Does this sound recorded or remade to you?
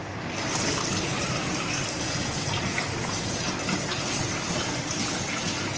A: recorded